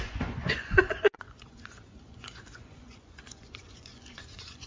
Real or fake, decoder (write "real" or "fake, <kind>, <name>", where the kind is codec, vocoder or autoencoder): fake, vocoder, Vocos